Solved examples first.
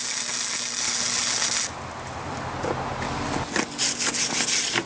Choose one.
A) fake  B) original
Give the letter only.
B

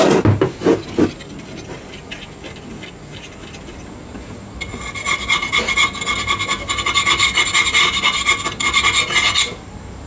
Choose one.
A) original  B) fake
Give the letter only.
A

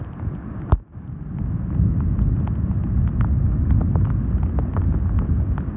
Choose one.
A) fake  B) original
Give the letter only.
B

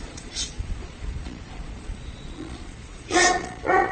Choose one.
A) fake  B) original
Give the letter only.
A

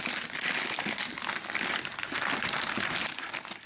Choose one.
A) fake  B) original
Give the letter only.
B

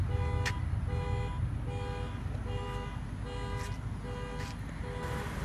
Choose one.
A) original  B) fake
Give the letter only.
A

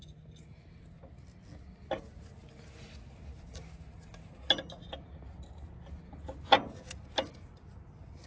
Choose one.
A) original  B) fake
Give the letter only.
A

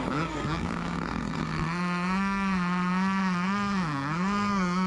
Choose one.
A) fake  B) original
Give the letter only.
A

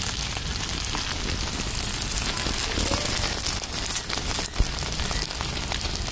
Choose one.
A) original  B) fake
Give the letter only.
A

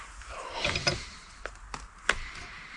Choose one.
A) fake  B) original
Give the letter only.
B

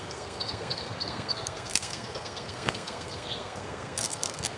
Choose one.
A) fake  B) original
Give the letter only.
A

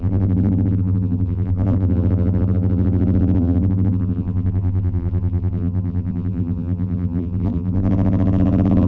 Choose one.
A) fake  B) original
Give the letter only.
A